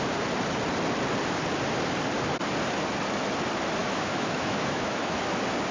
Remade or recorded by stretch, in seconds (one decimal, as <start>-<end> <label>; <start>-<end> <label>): 0.0-3.8 recorded; 3.8-5.2 remade; 5.2-5.7 recorded